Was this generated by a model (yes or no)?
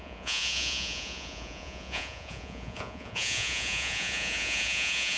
yes